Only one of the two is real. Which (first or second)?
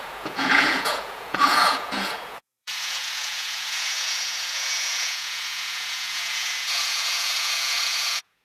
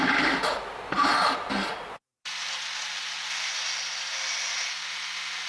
second